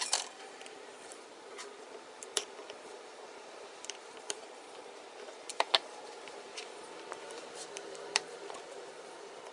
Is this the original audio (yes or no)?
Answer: no